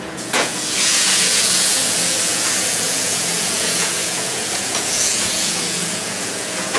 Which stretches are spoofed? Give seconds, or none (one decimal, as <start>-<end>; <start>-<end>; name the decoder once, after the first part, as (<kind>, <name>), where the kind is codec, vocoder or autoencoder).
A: 0.0-6.8 (vocoder, Vocos)